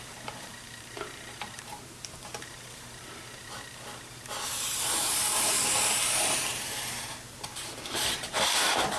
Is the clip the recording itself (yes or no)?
no